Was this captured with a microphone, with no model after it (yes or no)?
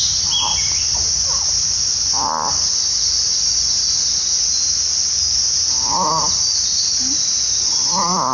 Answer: yes